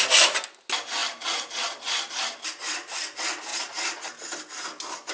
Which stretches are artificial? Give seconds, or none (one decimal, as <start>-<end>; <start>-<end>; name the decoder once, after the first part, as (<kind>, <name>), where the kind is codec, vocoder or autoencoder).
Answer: none